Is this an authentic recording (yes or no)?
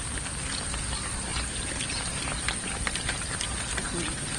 yes